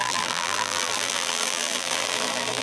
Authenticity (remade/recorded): remade